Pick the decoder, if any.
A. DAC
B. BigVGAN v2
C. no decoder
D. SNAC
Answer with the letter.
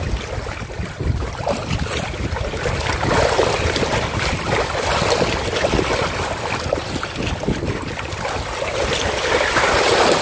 C